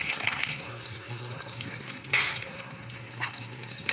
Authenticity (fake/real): fake